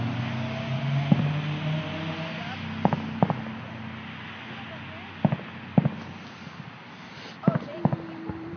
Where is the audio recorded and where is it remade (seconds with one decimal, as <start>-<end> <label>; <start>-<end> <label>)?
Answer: 0.0-8.6 recorded